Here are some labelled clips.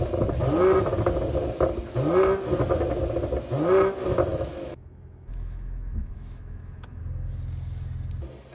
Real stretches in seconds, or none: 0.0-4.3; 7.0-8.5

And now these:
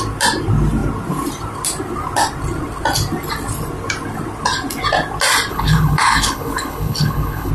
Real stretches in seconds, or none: 0.0-5.5

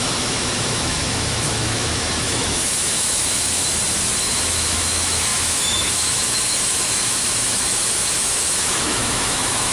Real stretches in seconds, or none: 3.6-4.2

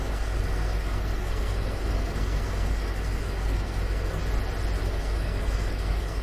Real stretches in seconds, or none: 4.2-4.8